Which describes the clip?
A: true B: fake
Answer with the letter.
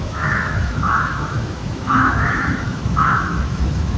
B